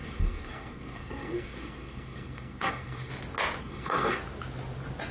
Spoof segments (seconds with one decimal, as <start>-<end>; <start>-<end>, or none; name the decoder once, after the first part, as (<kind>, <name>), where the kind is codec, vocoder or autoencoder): 0.0-3.1 (codec, SNAC); 3.6-4.2